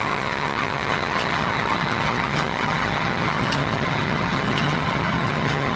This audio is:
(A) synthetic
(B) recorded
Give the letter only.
A